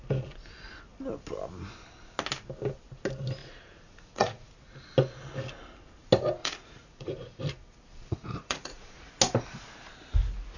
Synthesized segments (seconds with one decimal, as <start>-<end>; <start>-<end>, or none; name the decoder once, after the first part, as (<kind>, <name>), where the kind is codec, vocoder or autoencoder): 3.4-4.5 (vocoder, Vocos); 6.4-7.4; 7.9-9.1